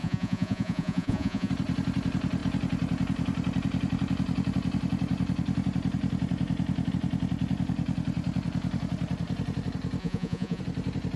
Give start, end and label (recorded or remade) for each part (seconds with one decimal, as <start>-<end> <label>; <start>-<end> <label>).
0.0-1.5 remade; 1.5-10.0 recorded; 10.0-10.6 remade; 10.6-11.2 recorded